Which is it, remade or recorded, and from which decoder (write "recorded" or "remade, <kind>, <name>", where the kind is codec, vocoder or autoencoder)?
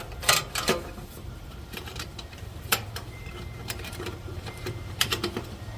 remade, vocoder, BigVGAN v2